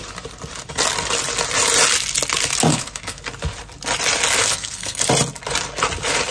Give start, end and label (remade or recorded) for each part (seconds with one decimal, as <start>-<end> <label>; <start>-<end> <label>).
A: 0.0-2.7 recorded; 2.7-3.2 remade; 3.2-4.4 recorded; 4.4-5.0 remade; 5.0-6.3 recorded